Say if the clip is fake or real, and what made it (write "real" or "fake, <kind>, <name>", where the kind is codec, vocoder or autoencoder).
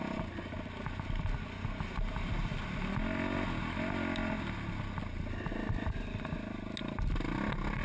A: real